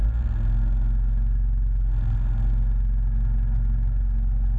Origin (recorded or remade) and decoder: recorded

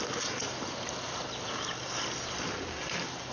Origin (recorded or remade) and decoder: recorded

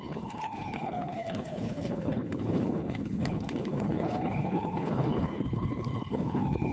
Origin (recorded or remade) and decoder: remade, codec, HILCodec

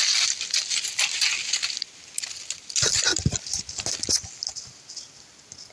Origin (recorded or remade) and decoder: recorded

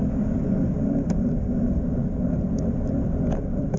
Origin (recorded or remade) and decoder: recorded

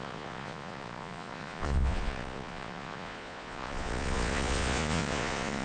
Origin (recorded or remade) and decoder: remade, vocoder, Vocos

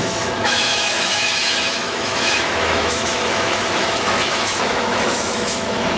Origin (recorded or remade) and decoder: remade, autoencoder, DAC-VAE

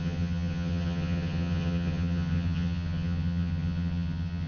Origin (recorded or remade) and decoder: remade, vocoder, HiFi-GAN